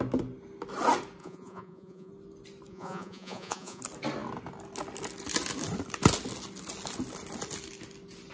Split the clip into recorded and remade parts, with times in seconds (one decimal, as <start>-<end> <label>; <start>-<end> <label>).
0.0-1.2 recorded; 1.2-2.1 remade; 2.1-2.7 recorded; 2.7-3.8 remade; 3.8-8.3 recorded